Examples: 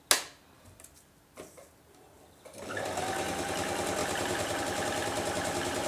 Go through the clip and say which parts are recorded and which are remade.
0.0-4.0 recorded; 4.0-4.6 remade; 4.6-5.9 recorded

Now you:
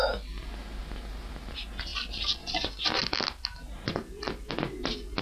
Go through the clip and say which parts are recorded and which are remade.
0.0-5.2 recorded

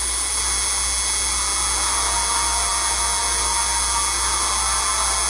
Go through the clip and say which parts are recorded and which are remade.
0.0-5.3 recorded

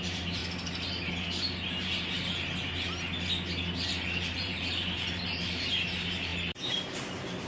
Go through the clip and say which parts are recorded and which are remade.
0.0-0.4 remade; 0.4-3.9 recorded; 3.9-7.5 remade

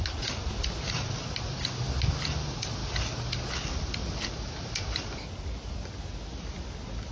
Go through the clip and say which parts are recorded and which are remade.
0.0-7.1 recorded